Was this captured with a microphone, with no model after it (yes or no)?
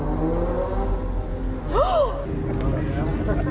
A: yes